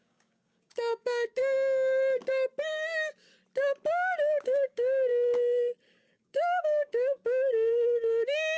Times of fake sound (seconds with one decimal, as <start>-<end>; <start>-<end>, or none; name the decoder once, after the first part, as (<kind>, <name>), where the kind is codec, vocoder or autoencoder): 0.0-1.4 (codec, DAC); 4.4-5.1; 5.8-8.6